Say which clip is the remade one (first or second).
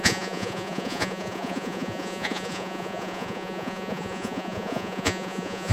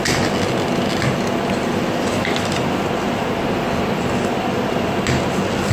first